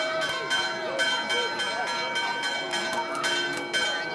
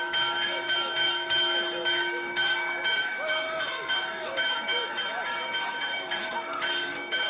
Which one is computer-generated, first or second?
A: second